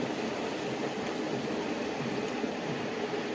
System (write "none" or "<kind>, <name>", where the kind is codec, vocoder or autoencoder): none